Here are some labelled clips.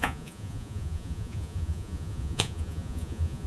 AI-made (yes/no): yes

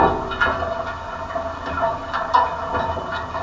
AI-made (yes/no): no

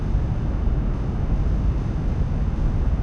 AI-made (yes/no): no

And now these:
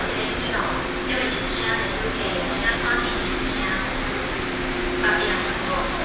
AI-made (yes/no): no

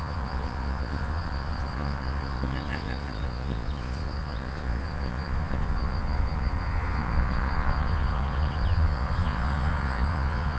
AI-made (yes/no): yes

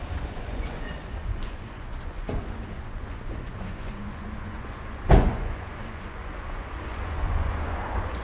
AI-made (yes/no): yes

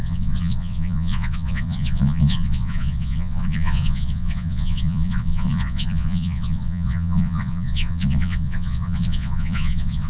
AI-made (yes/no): yes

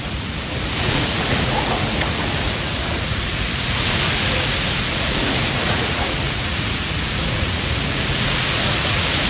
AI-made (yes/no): yes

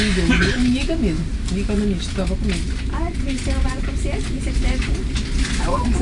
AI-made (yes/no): no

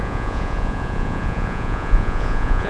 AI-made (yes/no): yes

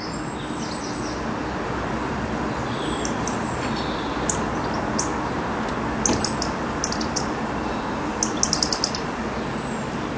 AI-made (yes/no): no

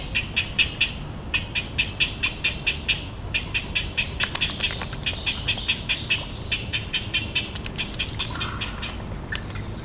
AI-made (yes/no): no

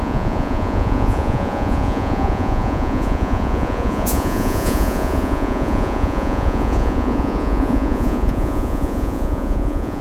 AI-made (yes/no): yes